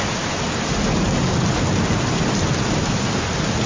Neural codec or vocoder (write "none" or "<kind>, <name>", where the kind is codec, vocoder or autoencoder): none